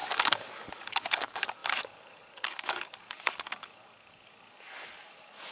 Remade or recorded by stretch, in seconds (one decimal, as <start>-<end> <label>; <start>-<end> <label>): 0.0-5.5 remade